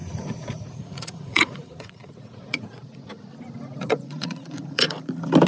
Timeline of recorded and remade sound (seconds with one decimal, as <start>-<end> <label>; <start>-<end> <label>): 0.0-3.3 remade; 3.3-3.7 recorded; 3.7-5.1 remade; 5.1-5.5 recorded